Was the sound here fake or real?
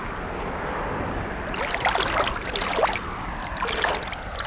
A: real